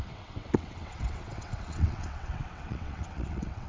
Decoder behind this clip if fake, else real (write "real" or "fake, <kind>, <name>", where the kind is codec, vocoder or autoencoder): fake, vocoder, WaveNeXt